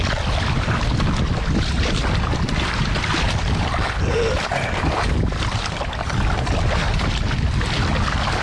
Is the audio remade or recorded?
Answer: recorded